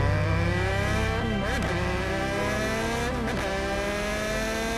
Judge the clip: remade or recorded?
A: recorded